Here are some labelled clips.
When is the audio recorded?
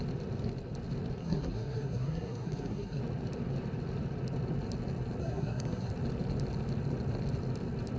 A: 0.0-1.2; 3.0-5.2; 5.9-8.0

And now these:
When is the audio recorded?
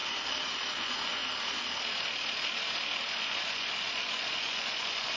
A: 0.0-0.7; 1.2-3.2